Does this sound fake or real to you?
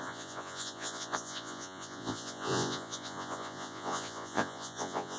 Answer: fake